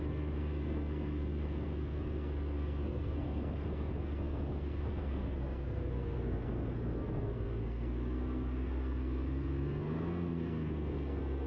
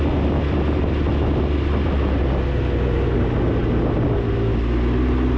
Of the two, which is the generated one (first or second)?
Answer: first